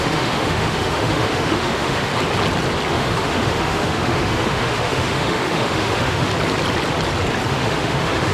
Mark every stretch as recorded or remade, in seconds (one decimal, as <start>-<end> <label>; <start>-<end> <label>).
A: 0.0-2.1 remade; 2.1-2.9 recorded; 2.9-6.3 remade; 6.3-7.5 recorded; 7.5-8.3 remade

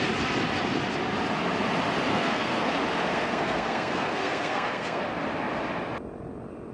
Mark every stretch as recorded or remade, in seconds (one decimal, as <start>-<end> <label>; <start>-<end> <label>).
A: 0.0-2.1 recorded; 2.1-2.7 remade; 2.7-3.1 recorded; 3.1-5.0 remade; 5.0-6.7 recorded

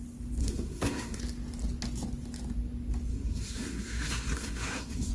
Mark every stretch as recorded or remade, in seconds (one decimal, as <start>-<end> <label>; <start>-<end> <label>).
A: 0.0-0.4 recorded; 0.4-1.2 remade; 1.2-3.1 recorded; 3.1-5.1 remade

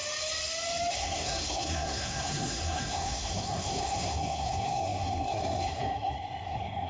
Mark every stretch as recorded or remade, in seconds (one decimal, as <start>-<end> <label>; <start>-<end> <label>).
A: 0.0-0.9 recorded; 0.9-6.9 remade

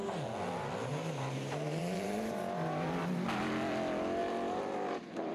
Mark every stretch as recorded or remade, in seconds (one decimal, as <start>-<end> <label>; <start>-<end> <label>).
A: 0.0-0.9 recorded; 0.9-2.4 remade; 2.4-4.2 recorded; 4.2-5.3 remade

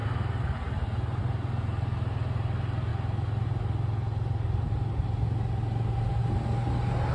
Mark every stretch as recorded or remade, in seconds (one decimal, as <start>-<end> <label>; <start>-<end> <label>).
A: 0.0-7.1 recorded

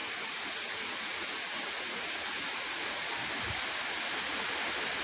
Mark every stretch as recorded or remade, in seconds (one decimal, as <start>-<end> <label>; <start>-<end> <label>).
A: 0.0-3.0 remade; 3.0-5.0 recorded